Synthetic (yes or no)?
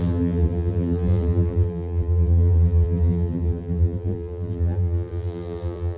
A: yes